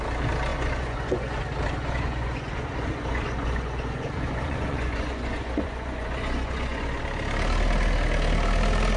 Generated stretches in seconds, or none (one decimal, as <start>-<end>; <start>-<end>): 0.5-1.4; 1.8-7.0